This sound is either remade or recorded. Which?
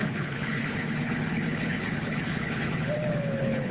remade